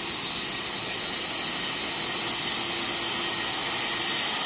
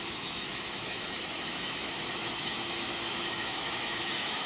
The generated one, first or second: second